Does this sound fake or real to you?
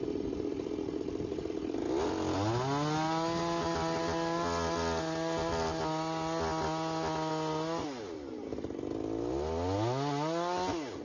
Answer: real